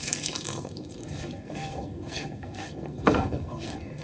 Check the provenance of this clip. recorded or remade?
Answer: remade